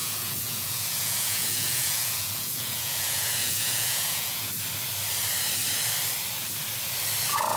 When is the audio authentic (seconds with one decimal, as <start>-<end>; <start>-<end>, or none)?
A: 4.5-7.6